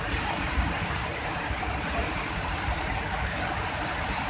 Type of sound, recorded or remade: remade